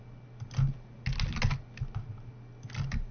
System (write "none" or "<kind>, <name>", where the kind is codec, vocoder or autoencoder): none